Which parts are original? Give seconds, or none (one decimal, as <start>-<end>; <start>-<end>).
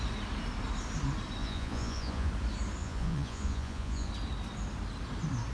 0.0-1.4; 2.3-2.8; 4.1-5.5